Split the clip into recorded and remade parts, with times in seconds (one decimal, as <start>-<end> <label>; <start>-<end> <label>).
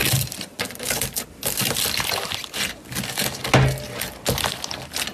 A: 0.0-5.1 recorded